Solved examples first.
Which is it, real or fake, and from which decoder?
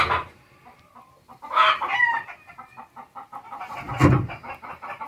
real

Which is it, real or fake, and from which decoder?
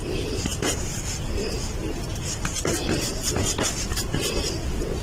real